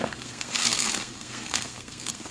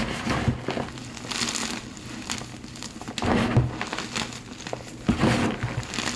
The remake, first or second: first